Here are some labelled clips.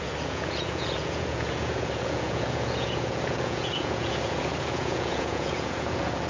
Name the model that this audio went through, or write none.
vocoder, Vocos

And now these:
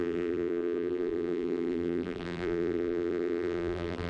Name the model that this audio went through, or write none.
vocoder, BigVGAN v2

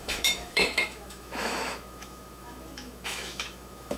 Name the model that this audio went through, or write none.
autoencoder, DAC-VAE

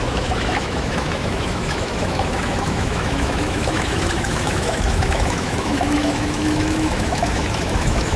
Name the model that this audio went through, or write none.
autoencoder, DAC-VAE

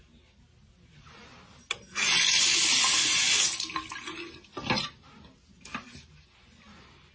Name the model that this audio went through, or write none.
none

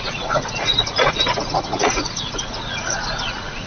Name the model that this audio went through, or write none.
vocoder, Vocos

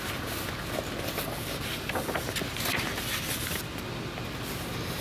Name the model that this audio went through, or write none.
none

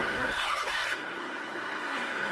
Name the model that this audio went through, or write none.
codec, SNAC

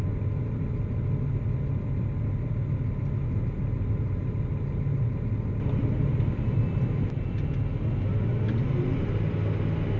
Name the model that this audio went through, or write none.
none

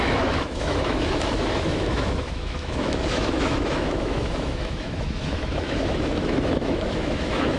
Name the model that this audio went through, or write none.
autoencoder, DAC-VAE